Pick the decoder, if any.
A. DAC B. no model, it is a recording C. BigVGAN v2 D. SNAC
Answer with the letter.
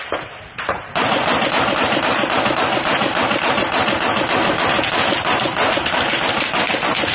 B